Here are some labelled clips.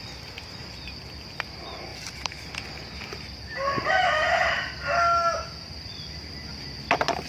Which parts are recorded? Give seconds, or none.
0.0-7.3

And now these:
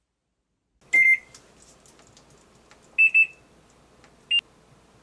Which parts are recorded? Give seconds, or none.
0.0-5.0

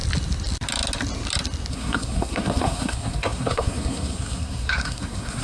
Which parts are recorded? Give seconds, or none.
0.0-1.7

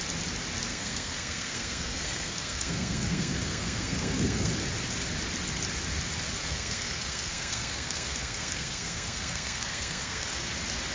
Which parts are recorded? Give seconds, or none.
0.0-0.7; 4.5-6.4; 10.5-10.9